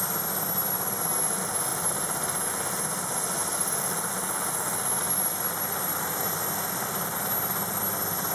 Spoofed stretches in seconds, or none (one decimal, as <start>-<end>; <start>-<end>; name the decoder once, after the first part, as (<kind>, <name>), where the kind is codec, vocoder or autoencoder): none